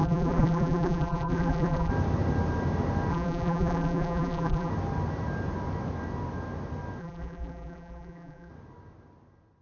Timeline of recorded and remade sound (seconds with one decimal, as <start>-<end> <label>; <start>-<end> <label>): 0.0-1.9 remade; 1.9-3.1 recorded; 3.1-4.7 remade; 4.7-7.0 recorded; 7.0-8.5 remade; 8.5-9.6 recorded